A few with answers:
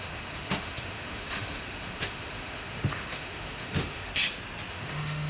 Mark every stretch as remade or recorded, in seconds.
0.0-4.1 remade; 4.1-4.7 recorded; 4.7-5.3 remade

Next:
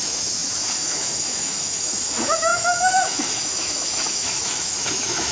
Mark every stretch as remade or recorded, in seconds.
0.0-5.3 remade

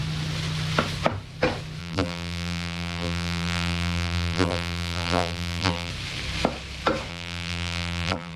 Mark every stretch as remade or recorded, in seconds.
0.0-1.8 recorded; 1.8-5.9 remade; 5.9-7.1 recorded; 7.1-8.4 remade

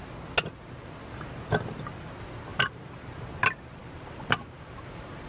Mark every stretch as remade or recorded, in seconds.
0.0-2.5 recorded; 2.5-3.3 remade; 3.3-3.8 recorded; 3.8-5.3 remade

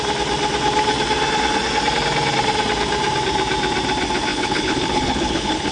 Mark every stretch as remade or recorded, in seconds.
0.0-4.3 recorded; 4.3-5.7 remade

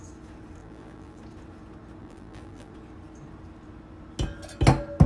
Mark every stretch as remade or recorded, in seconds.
0.0-0.6 recorded; 0.6-1.2 remade; 1.2-2.0 recorded; 2.0-2.7 remade; 2.7-5.1 recorded

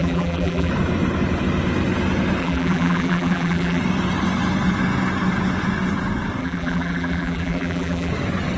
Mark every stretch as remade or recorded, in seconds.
0.0-0.7 remade; 0.7-2.4 recorded; 2.4-3.8 remade; 3.8-6.4 recorded; 6.4-8.1 remade; 8.1-8.6 recorded

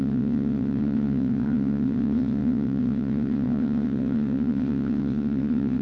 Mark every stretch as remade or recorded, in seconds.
0.0-5.8 remade